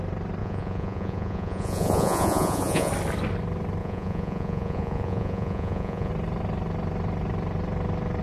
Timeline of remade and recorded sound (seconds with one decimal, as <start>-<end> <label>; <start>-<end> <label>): 0.0-0.4 recorded; 0.4-2.9 remade; 2.9-3.8 recorded; 3.8-6.1 remade; 6.1-8.2 recorded